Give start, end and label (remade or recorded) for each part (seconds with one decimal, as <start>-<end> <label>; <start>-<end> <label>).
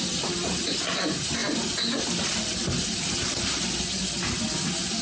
0.0-5.0 recorded